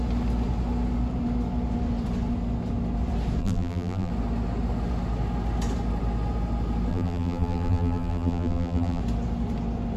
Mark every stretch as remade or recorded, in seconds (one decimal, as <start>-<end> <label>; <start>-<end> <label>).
0.0-3.4 recorded; 3.4-4.1 remade; 4.1-6.9 recorded; 6.9-9.0 remade; 9.0-10.0 recorded